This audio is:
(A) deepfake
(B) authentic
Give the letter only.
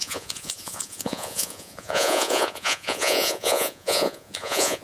A